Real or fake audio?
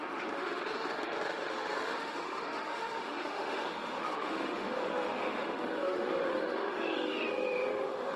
fake